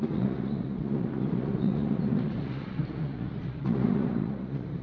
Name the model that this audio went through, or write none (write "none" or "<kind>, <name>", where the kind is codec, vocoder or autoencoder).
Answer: vocoder, Vocos